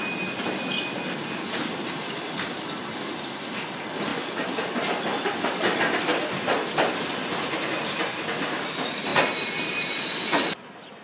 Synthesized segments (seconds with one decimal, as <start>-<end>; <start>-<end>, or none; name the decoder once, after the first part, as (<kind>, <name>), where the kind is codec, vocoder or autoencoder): 9.1-10.0 (vocoder, BigVGAN v2)